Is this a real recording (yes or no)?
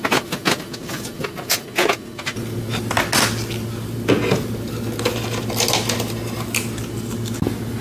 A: yes